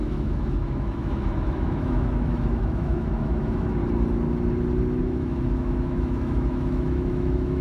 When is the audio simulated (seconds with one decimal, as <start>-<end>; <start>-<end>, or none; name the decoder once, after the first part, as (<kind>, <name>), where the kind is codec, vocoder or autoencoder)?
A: 0.0-3.8 (autoencoder, DAC-VAE); 5.0-7.6

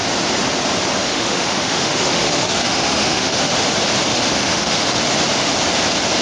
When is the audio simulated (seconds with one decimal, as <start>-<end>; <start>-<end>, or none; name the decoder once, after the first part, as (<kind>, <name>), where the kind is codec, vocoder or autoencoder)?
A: 1.0-3.5 (autoencoder, DAC-VAE); 4.1-5.0

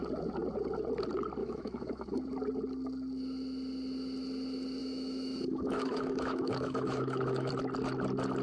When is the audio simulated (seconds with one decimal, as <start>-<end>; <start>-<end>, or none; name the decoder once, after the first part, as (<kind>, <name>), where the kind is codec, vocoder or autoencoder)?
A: 1.4-2.2 (autoencoder, DAC-VAE); 4.8-7.5

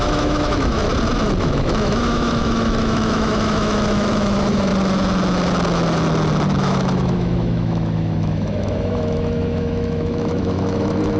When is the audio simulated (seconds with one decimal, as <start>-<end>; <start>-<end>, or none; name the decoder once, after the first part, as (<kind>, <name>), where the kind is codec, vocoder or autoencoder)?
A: 0.0-0.8 (autoencoder, DAC-VAE); 1.4-4.7; 6.6-11.2

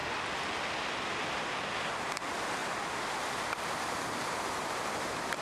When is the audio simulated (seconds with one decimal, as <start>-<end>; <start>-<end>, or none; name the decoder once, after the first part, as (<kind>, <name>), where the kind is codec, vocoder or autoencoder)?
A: none

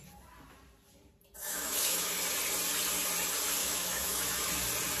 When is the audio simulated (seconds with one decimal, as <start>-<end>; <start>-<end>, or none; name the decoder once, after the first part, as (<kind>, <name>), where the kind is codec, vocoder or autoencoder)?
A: 1.4-2.1 (autoencoder, DAC-VAE); 3.6-4.5

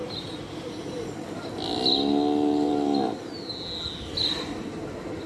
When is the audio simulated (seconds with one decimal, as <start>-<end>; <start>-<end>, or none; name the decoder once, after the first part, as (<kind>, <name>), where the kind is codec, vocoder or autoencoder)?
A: none